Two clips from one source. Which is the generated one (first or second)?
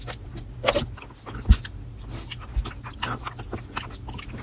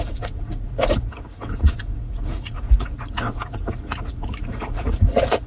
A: second